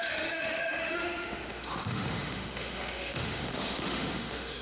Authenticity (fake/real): fake